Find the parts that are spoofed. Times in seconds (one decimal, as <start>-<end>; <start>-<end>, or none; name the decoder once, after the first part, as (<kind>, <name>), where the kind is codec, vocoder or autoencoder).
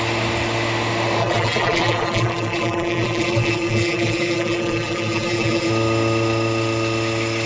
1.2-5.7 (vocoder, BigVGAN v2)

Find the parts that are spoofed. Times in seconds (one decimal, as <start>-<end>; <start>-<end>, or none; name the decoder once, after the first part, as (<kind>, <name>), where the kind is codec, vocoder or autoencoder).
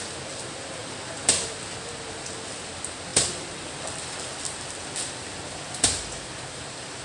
3.1-7.0 (vocoder, BigVGAN v2)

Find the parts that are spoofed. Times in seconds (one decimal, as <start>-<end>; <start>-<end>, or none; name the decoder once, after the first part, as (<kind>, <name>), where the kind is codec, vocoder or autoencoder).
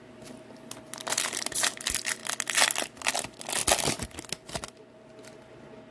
none